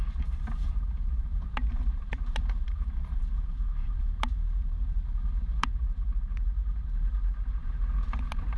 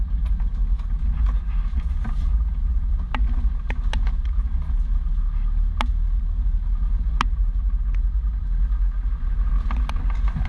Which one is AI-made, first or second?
first